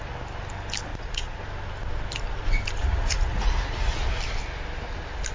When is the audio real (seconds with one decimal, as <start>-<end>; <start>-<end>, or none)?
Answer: 0.0-0.9; 1.4-2.8; 4.2-5.3

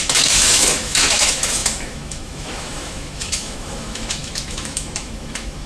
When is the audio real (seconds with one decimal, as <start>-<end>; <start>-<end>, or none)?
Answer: none

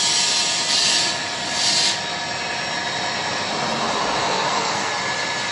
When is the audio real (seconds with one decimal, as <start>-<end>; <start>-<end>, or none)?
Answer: 0.0-4.2; 4.9-5.5